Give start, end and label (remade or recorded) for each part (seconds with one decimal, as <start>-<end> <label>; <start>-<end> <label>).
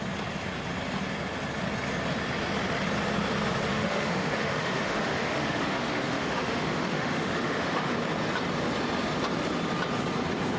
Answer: 0.0-3.7 recorded; 3.7-7.9 remade; 7.9-10.6 recorded